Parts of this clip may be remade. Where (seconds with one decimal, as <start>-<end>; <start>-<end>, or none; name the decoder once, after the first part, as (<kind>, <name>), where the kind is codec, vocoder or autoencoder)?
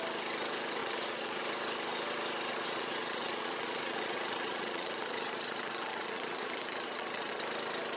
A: 0.8-1.4 (vocoder, Vocos); 2.5-7.3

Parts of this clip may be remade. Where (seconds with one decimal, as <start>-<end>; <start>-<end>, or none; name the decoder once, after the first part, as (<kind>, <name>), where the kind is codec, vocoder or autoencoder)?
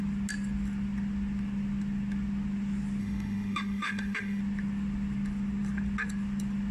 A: 3.0-4.4 (autoencoder, DAC-VAE)